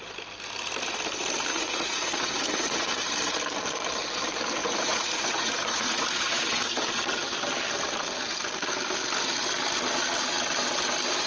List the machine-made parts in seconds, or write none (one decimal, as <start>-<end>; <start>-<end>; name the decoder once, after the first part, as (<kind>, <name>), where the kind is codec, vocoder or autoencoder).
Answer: 1.5-2.9 (vocoder, Vocos); 4.6-6.6